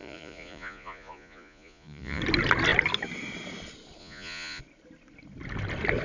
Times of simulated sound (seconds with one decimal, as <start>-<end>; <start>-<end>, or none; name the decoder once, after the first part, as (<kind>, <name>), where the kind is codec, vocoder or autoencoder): 0.0-2.2 (vocoder, Vocos); 4.0-4.6

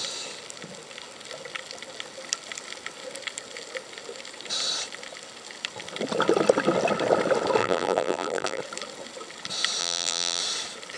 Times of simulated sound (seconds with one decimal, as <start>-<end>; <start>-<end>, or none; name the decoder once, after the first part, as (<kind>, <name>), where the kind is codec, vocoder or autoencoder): 7.6-8.6 (vocoder, BigVGAN v2); 9.8-10.4

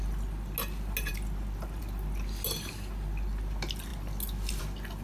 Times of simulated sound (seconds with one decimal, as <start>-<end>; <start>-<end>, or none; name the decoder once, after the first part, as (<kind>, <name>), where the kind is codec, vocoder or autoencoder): none

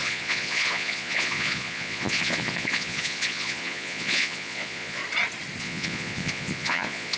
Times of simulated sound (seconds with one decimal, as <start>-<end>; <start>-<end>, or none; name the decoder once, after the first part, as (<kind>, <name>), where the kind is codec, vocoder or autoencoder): 0.0-5.0 (vocoder, Vocos); 5.6-7.2